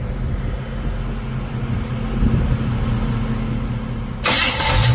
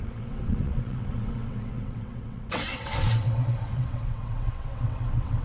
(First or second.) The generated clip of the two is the second